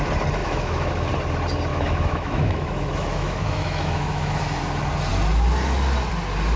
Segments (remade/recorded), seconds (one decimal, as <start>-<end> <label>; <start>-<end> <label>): 0.0-0.4 recorded; 0.4-1.1 remade; 1.1-1.7 recorded; 1.7-4.4 remade; 4.4-6.6 recorded